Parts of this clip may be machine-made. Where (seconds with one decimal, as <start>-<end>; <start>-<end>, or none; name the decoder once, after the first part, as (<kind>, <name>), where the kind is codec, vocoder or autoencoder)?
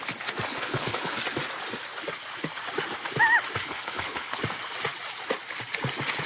0.5-1.2 (codec, HILCodec); 3.6-4.4